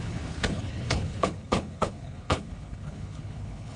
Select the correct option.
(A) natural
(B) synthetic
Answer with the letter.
B